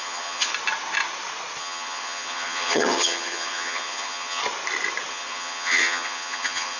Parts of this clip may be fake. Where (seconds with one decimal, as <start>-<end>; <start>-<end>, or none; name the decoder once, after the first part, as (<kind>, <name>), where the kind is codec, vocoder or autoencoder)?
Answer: 0.0-0.5 (vocoder, HiFi-GAN); 1.6-4.4; 5.1-6.8